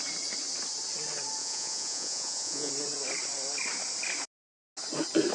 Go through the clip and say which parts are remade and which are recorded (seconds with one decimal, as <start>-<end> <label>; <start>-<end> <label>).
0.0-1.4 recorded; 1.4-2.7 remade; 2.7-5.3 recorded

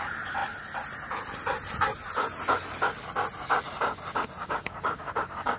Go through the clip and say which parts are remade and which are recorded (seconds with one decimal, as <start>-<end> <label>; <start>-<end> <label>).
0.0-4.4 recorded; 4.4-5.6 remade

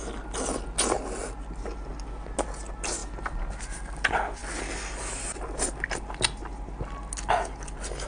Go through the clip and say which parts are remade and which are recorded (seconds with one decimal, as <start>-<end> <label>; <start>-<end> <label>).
0.0-8.1 recorded

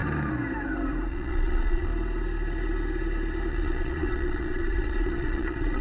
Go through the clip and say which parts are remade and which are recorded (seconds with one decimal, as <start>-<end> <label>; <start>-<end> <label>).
0.0-1.1 recorded; 1.1-1.9 remade; 1.9-3.5 recorded; 3.5-5.8 remade

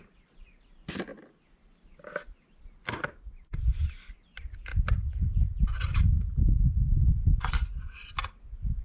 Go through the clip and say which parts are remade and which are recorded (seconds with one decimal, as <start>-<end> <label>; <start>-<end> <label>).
0.0-8.8 recorded

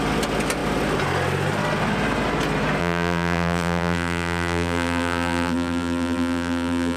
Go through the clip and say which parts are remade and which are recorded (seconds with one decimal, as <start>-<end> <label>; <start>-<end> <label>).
0.0-2.8 recorded; 2.8-7.0 remade